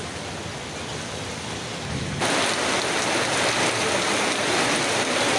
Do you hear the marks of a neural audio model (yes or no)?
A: no